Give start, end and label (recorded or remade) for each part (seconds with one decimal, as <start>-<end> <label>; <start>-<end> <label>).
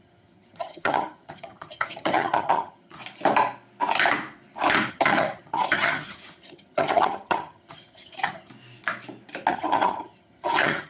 0.0-3.0 remade; 3.0-4.9 recorded; 4.9-8.5 remade; 8.5-9.5 recorded; 9.5-10.9 remade